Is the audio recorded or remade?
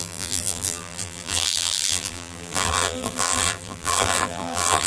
remade